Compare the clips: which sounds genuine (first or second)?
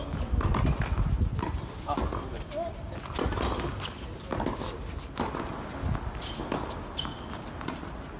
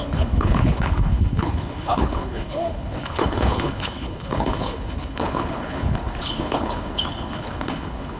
first